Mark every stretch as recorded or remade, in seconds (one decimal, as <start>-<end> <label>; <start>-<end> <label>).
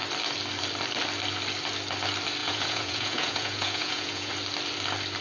0.0-2.4 recorded; 2.4-4.3 remade; 4.3-5.2 recorded